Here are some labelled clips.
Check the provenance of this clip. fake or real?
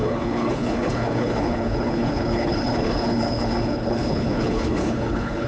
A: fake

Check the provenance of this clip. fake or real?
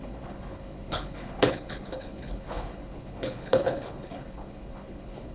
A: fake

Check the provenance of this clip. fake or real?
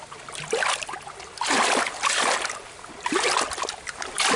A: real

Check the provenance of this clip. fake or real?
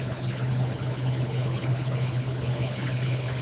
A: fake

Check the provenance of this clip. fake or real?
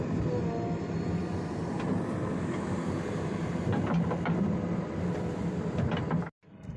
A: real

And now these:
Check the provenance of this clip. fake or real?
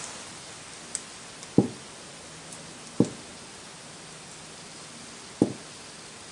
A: real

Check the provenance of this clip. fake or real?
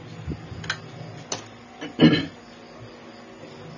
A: real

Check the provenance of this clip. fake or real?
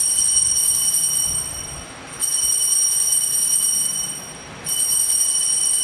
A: real